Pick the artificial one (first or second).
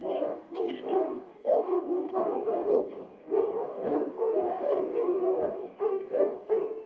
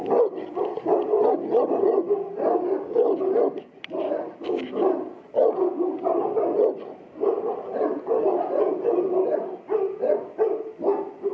first